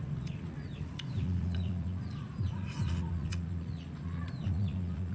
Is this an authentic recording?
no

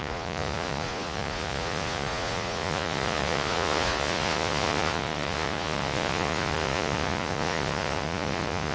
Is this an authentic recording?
no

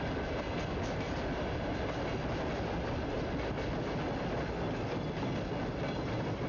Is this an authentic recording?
yes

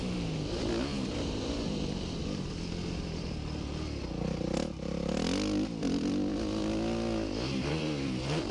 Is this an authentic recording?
yes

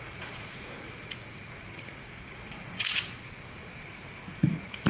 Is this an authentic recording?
no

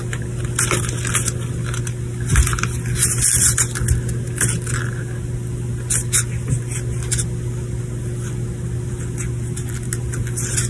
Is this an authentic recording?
yes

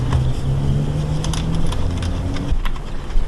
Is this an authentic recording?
yes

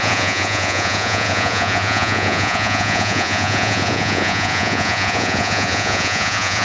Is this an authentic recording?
no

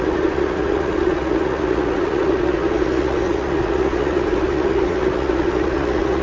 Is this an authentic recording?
no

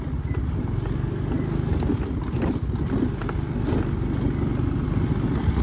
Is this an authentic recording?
yes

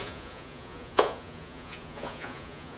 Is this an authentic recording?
no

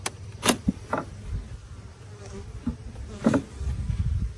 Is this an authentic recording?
yes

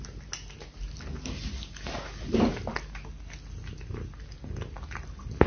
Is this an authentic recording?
yes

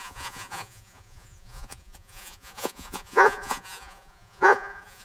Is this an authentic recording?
no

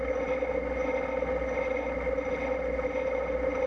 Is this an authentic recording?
yes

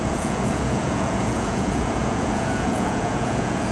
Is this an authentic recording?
no